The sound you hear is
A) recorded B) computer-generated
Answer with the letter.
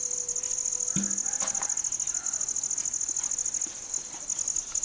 A